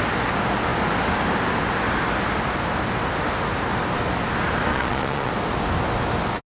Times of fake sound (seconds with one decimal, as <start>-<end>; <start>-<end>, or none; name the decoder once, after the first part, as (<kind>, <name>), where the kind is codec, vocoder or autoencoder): 4.7-5.3 (vocoder, Vocos)